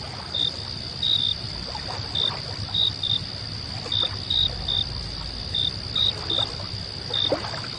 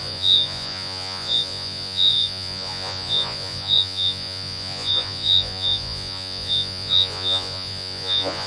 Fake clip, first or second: second